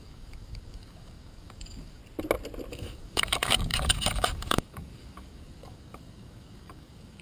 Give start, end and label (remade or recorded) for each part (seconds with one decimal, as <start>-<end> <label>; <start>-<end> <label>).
0.0-2.0 remade; 2.0-2.7 recorded; 2.7-7.2 remade